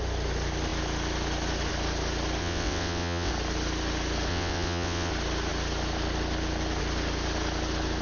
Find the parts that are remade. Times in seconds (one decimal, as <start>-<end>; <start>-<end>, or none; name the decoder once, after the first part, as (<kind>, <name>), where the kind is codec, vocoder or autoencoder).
2.4-3.3 (vocoder, WaveNeXt); 4.3-5.1